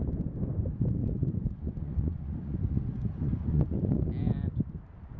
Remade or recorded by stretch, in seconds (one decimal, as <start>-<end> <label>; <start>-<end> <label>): 0.0-1.0 recorded; 1.0-4.1 remade; 4.1-5.2 recorded